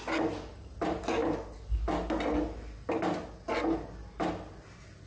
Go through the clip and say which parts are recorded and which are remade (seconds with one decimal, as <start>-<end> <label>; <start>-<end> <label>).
0.0-5.1 recorded